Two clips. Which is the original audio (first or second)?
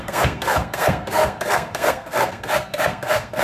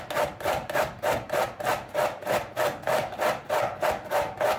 second